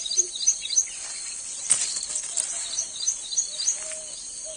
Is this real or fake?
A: real